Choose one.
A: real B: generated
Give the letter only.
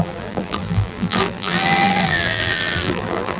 B